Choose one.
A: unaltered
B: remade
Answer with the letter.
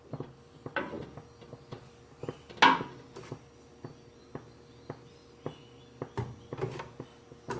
A